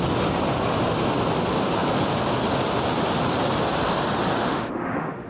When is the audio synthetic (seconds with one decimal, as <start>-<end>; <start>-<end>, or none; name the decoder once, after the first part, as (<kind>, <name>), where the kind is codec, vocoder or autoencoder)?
4.4-5.3 (autoencoder, DAC-VAE)